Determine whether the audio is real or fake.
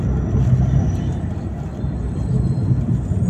real